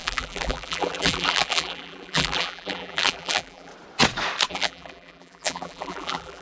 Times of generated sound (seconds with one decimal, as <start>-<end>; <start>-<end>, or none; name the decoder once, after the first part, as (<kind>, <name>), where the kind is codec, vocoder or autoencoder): 0.0-3.7 (vocoder, BigVGAN v2); 4.5-6.4